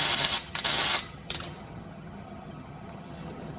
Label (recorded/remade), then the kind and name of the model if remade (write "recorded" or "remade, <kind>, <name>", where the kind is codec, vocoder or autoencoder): remade, vocoder, HiFi-GAN